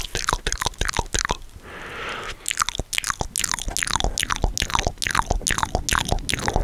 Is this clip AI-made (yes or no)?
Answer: no